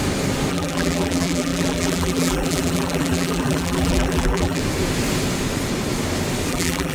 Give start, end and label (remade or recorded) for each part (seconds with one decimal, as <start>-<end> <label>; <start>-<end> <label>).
0.0-0.5 recorded; 0.5-4.6 remade; 4.6-6.5 recorded; 6.5-6.9 remade